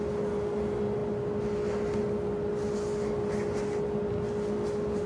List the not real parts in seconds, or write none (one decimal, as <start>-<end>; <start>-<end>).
none